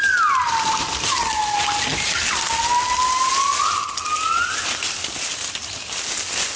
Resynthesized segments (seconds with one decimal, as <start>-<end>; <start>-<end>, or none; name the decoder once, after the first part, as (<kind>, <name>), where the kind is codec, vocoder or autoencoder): none